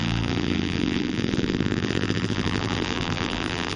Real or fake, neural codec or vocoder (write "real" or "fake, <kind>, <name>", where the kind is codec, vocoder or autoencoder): fake, vocoder, BigVGAN v2